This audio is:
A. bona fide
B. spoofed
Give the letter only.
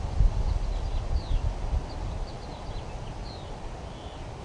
A